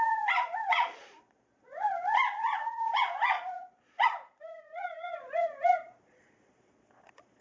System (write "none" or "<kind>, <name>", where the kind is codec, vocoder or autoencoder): vocoder, Vocos